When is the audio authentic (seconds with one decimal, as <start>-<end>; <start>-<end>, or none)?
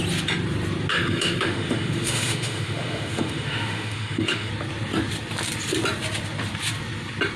0.0-0.9; 4.5-7.4